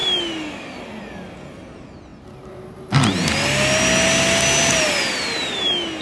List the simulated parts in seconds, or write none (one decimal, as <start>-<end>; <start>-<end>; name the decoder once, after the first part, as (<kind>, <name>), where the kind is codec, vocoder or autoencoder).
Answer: none